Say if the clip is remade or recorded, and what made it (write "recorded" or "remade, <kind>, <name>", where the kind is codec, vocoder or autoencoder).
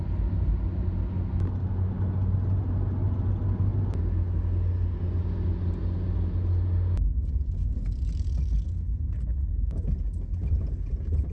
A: recorded